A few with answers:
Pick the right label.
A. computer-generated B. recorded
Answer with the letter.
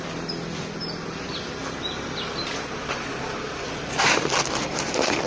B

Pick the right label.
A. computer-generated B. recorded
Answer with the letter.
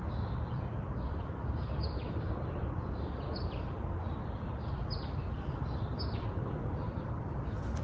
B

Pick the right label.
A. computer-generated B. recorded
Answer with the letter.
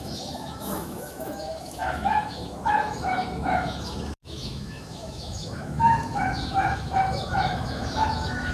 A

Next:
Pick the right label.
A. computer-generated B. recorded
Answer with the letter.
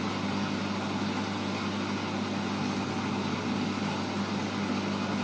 B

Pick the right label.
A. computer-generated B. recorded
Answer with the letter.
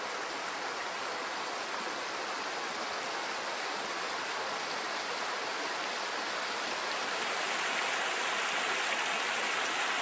B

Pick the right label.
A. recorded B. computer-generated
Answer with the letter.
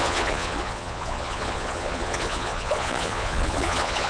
B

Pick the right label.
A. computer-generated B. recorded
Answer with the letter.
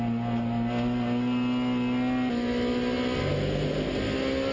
B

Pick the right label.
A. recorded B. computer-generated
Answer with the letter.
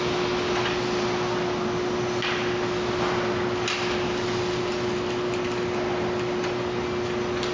A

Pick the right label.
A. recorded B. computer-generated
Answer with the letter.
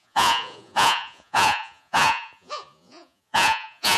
B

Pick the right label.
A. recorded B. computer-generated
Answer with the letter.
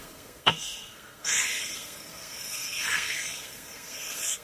B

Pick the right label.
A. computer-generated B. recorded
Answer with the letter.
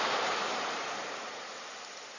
B